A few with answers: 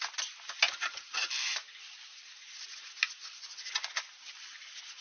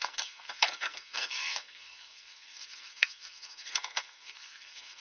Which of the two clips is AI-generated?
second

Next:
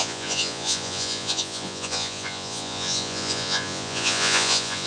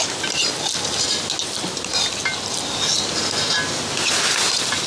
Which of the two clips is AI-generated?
first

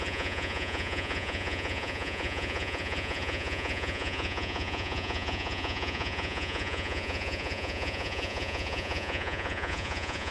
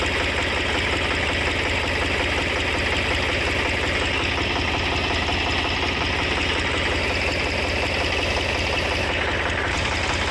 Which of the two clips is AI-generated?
first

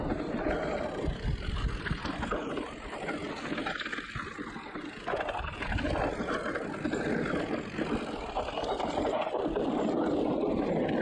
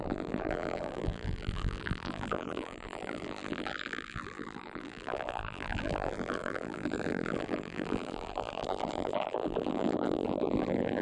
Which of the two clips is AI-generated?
second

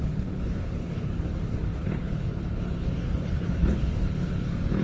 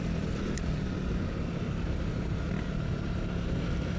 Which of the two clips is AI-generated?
first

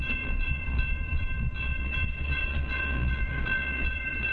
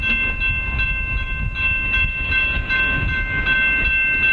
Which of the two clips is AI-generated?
first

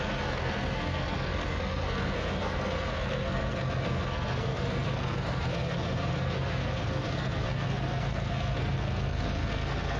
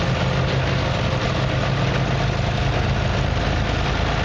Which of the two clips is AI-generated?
first